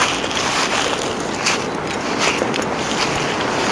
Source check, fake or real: real